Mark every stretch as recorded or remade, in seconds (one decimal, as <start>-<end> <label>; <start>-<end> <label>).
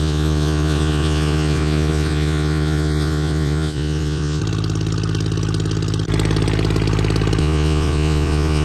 0.0-4.4 remade; 4.4-7.4 recorded; 7.4-8.6 remade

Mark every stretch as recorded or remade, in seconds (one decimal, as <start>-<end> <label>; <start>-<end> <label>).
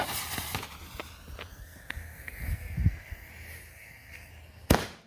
0.0-1.5 recorded; 1.5-3.3 remade; 3.3-3.7 recorded; 3.7-4.3 remade; 4.3-5.1 recorded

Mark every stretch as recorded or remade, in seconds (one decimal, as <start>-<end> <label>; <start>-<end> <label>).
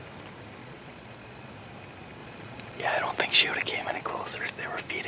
0.0-0.6 recorded; 0.6-1.5 remade; 1.5-2.2 recorded; 2.2-2.9 remade; 2.9-3.8 recorded; 3.8-4.4 remade; 4.4-5.1 recorded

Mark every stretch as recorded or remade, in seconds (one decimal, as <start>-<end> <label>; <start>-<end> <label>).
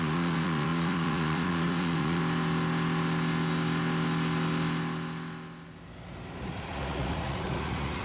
0.0-2.2 remade; 2.2-6.4 recorded; 6.4-8.0 remade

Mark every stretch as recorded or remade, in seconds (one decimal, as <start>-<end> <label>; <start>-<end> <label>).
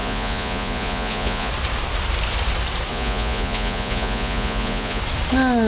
0.0-1.5 remade; 1.5-2.9 recorded; 2.9-5.0 remade; 5.0-5.7 recorded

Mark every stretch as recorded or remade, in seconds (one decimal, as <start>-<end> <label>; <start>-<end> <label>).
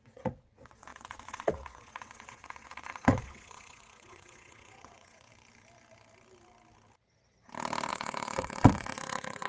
0.0-5.3 remade; 5.3-7.9 recorded; 7.9-9.5 remade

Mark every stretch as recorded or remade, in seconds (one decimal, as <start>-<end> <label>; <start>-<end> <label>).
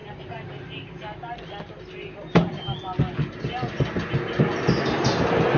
0.0-5.6 recorded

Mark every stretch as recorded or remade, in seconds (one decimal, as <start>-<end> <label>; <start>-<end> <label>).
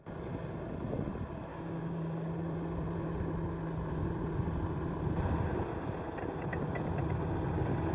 0.0-1.5 recorded; 1.5-2.3 remade; 2.3-7.9 recorded